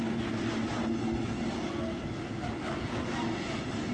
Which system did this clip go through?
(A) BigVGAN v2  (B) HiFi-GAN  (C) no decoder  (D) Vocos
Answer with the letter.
C